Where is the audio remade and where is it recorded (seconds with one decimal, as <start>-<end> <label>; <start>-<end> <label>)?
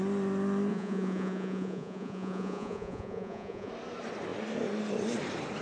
0.0-0.7 recorded; 0.7-3.7 remade; 3.7-5.6 recorded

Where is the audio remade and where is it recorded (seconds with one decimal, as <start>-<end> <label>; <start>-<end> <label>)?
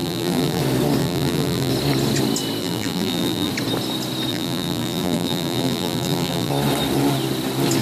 0.0-0.6 remade; 0.6-1.0 recorded; 1.0-1.7 remade; 1.7-2.6 recorded; 2.6-3.5 remade; 3.5-4.3 recorded; 4.3-6.5 remade; 6.5-7.8 recorded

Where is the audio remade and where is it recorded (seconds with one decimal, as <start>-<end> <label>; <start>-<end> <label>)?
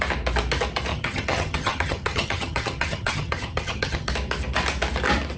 0.0-0.9 recorded; 0.9-4.1 remade; 4.1-5.4 recorded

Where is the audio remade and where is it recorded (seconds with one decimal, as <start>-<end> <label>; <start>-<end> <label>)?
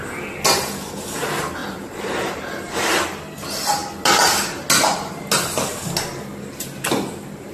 0.0-1.6 recorded; 1.6-2.7 remade; 2.7-7.5 recorded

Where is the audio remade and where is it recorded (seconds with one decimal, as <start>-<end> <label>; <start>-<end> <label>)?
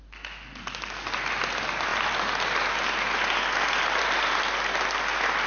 0.0-5.5 recorded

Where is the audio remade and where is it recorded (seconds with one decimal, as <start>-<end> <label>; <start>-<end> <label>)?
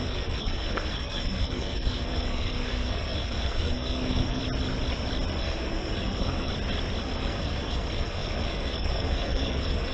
0.0-4.4 remade; 4.4-5.4 recorded; 5.4-6.5 remade; 6.5-7.0 recorded; 7.0-9.9 remade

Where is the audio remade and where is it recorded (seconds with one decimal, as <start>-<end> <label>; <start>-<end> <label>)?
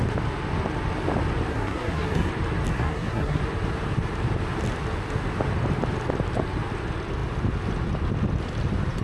0.0-1.5 recorded; 1.5-2.3 remade; 2.3-2.7 recorded; 2.7-3.4 remade; 3.4-9.0 recorded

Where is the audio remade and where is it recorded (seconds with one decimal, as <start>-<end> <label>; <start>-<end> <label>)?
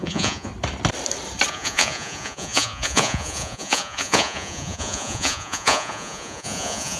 0.0-0.5 remade; 0.5-1.5 recorded; 1.5-7.0 remade